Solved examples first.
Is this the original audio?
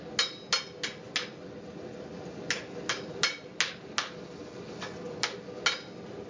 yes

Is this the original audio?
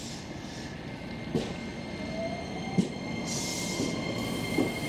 yes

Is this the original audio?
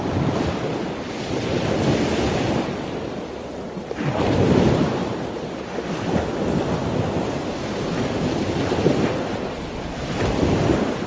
yes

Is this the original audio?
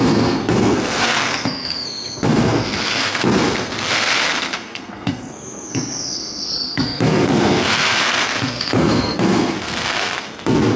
no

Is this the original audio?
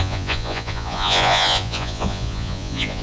no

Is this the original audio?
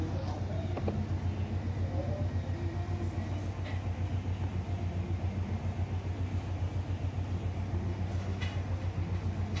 yes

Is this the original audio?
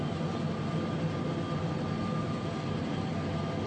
yes